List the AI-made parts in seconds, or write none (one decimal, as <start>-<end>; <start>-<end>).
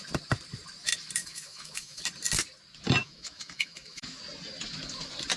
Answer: 1.2-2.0; 3.0-4.2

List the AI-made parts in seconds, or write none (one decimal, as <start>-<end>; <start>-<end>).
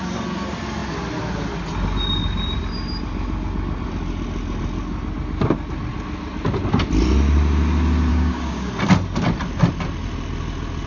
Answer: 8.1-8.7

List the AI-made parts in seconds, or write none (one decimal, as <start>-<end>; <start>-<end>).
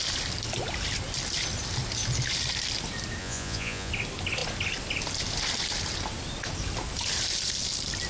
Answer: 3.2-3.9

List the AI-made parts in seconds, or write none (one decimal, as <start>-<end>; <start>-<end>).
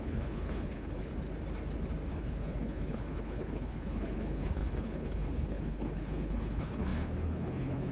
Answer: 0.0-1.1; 2.1-7.9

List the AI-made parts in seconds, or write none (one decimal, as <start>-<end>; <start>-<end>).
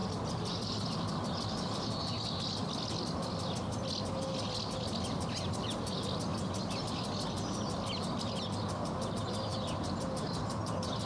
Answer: none